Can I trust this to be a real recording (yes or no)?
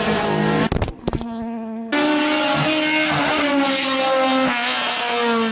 yes